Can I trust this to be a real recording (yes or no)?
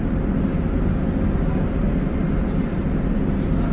yes